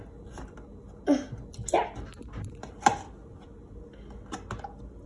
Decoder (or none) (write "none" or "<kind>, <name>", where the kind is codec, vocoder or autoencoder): none